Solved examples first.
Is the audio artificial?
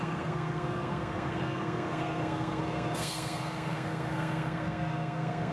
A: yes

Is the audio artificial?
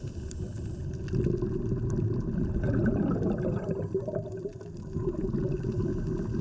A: no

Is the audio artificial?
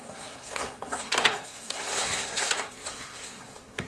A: yes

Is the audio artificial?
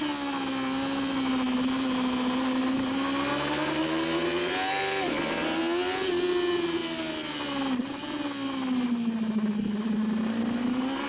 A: no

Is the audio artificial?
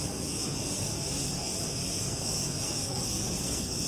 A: yes